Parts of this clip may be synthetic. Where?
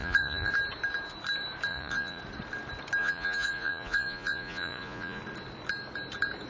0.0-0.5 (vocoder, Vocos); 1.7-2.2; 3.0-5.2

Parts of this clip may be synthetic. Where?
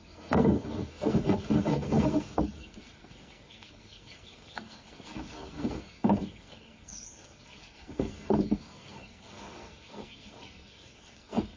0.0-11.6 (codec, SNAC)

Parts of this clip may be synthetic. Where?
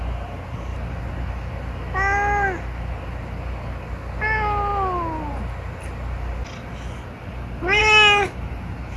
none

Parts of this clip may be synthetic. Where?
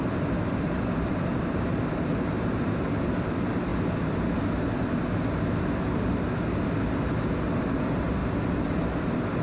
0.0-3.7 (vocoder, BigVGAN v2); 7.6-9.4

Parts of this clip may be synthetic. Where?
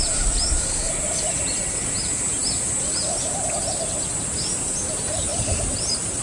0.0-2.4 (vocoder, BigVGAN v2); 3.6-6.2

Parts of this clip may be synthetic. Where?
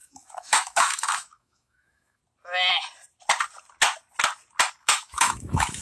0.0-2.2 (autoencoder, DAC-VAE); 4.8-5.8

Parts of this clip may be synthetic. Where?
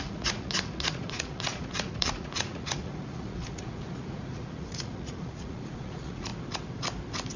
0.0-6.3 (vocoder, Vocos)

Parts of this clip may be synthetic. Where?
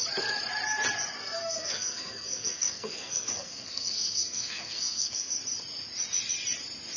1.2-5.3 (codec, SNAC)